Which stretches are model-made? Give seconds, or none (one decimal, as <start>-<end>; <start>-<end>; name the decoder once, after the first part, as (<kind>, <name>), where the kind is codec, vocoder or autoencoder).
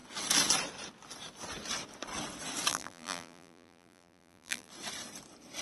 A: 2.7-4.7 (vocoder, BigVGAN v2)